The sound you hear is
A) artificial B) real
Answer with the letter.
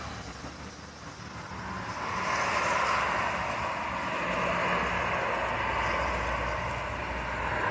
B